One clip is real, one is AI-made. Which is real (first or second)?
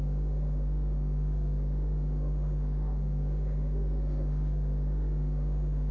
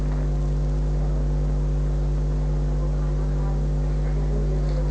second